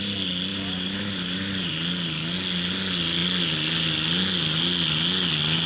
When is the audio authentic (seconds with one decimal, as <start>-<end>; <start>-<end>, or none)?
0.0-0.5; 1.7-5.7